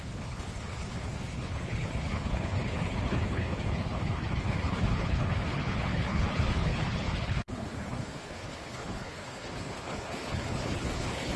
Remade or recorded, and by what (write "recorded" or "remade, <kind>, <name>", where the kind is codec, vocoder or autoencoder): remade, codec, HILCodec